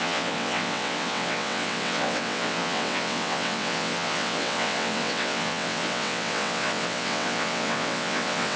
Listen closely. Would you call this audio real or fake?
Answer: fake